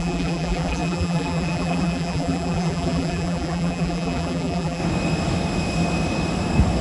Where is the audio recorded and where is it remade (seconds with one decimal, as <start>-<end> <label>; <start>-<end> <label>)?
0.0-4.8 remade; 4.8-6.8 recorded